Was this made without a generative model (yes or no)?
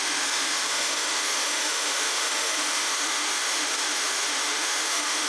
no